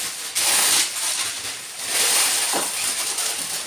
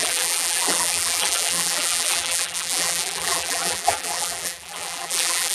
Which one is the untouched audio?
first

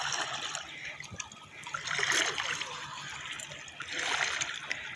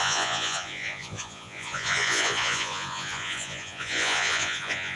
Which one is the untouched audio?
first